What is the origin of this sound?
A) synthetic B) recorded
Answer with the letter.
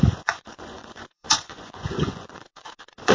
A